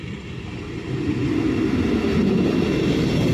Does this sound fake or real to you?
real